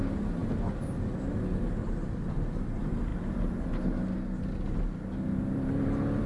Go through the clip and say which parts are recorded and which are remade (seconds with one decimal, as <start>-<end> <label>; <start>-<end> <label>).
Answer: 0.0-6.3 recorded